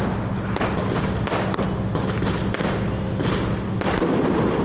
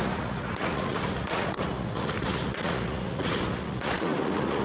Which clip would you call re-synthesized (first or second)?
second